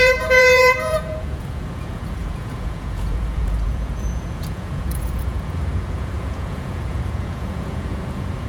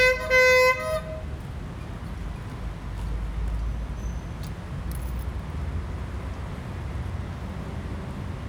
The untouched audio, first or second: second